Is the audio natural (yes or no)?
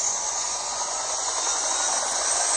no